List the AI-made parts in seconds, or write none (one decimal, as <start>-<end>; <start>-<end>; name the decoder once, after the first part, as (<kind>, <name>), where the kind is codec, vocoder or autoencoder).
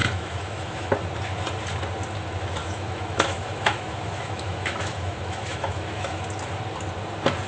0.0-0.9 (autoencoder, DAC-VAE); 2.6-6.2